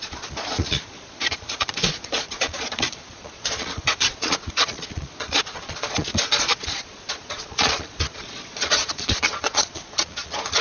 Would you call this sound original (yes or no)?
no